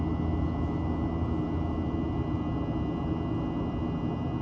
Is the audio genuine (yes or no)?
yes